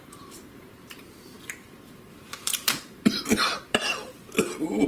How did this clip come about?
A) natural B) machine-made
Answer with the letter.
B